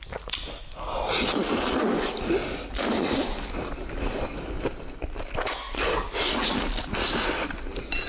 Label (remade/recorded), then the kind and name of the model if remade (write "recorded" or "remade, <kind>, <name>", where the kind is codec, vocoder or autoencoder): recorded